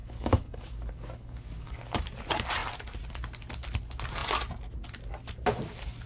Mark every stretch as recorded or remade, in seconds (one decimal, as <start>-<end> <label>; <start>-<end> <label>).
0.0-2.0 remade; 2.0-6.1 recorded